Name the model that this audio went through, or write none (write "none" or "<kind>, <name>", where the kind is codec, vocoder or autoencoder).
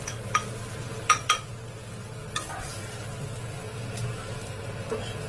none